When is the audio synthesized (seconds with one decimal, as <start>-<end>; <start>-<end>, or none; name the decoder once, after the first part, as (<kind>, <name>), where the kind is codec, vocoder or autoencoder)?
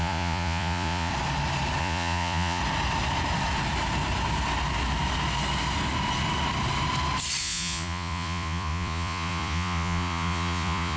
0.0-1.1 (vocoder, Vocos); 1.8-2.6; 7.4-11.0